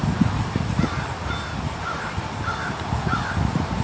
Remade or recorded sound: recorded